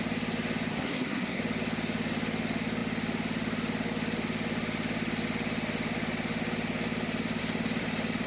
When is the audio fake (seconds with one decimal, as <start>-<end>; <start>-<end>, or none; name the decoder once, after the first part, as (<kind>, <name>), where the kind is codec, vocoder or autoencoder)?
0.7-1.4 (codec, SNAC)